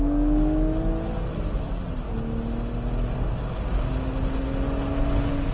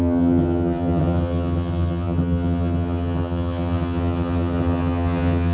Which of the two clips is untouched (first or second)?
first